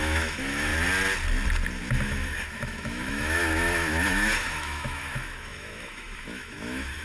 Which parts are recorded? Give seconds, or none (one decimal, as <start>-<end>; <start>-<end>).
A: 0.7-1.9